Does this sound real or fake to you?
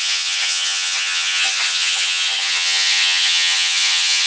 fake